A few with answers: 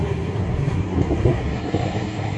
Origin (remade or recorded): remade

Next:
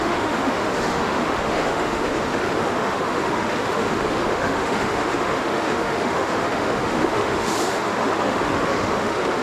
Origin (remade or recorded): remade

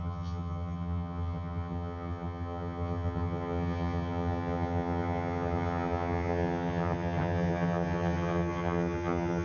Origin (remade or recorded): remade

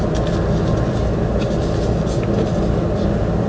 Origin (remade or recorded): recorded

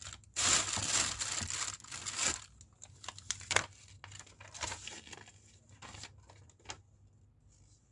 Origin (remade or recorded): recorded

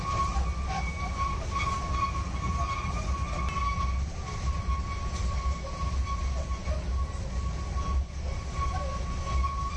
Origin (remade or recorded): recorded